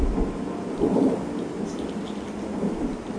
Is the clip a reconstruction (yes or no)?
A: no